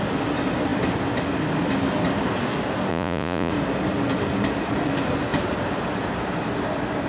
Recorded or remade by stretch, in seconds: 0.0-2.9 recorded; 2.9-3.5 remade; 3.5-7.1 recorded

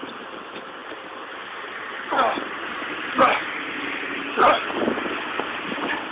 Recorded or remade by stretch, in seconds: 0.0-6.1 recorded

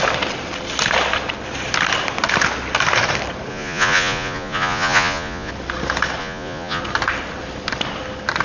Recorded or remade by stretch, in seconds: 0.0-3.5 recorded; 3.5-5.5 remade; 5.5-6.2 recorded; 6.2-6.8 remade; 6.8-8.4 recorded

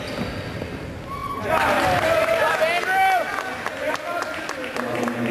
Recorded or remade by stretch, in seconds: 0.0-5.3 recorded

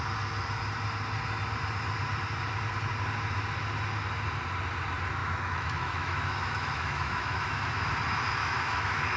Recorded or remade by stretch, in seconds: 0.0-5.2 recorded; 5.2-7.9 remade; 7.9-8.4 recorded; 8.4-9.2 remade

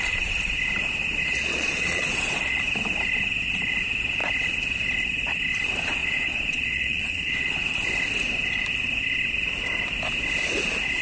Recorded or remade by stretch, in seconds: 0.0-1.0 recorded; 1.0-2.6 remade; 2.6-6.0 recorded; 6.0-7.6 remade; 7.6-11.0 recorded

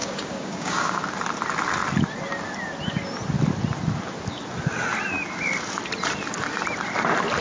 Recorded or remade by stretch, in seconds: 0.0-1.0 remade; 1.0-7.4 recorded

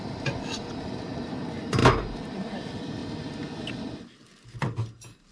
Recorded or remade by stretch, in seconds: 0.0-1.8 remade; 1.8-2.3 recorded; 2.3-3.0 remade; 3.0-3.7 recorded; 3.7-4.3 remade; 4.3-5.3 recorded